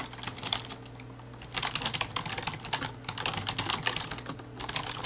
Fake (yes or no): no